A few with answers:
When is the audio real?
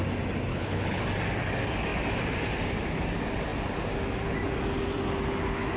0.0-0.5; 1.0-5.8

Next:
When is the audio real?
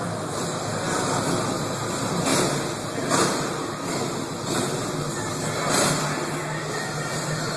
0.0-7.6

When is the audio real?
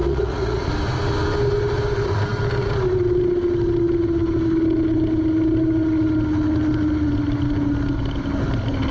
0.7-8.9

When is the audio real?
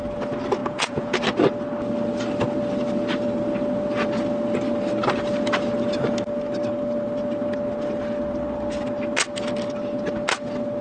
0.0-0.6; 1.2-10.8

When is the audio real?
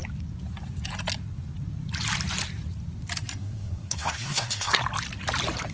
0.0-3.4; 4.8-5.7